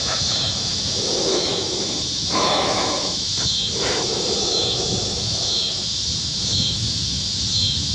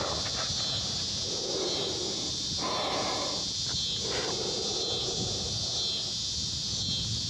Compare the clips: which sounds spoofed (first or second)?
first